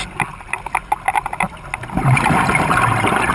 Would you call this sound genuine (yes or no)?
yes